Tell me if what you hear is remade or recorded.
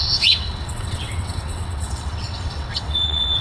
remade